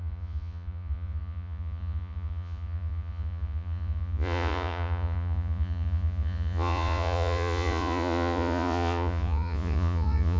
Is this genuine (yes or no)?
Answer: no